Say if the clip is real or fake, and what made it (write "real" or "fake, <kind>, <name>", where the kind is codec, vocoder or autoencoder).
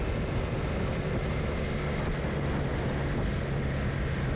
real